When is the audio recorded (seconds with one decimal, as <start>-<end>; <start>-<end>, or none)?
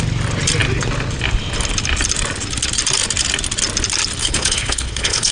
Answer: 0.0-4.2